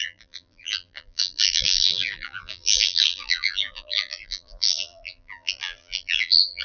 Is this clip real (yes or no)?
no